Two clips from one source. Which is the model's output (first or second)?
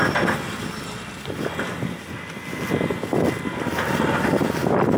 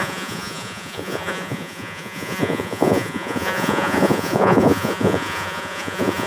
second